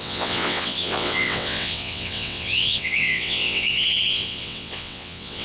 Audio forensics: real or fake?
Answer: fake